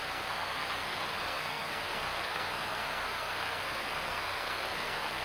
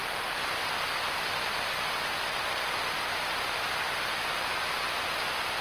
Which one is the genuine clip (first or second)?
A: second